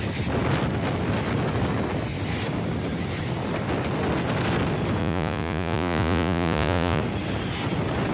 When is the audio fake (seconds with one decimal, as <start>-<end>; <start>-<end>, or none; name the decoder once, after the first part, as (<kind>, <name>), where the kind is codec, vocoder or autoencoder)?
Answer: 5.0-7.0 (vocoder, Vocos)